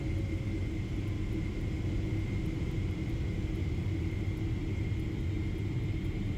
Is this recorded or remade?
recorded